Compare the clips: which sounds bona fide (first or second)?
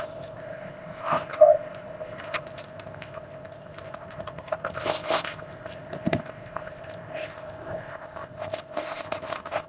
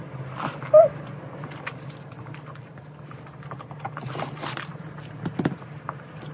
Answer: second